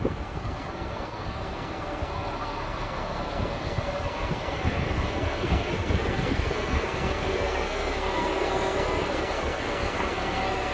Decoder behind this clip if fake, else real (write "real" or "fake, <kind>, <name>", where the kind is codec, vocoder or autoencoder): fake, codec, SNAC